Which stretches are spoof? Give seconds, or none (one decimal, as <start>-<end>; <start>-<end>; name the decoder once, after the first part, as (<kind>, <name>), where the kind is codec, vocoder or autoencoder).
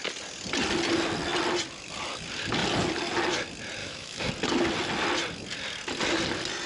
3.8-4.3 (autoencoder, DAC-VAE)